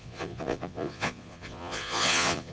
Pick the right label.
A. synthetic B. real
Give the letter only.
A